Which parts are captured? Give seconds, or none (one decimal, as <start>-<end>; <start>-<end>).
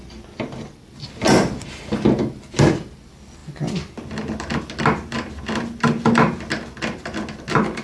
0.0-7.8